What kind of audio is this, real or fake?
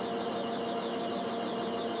real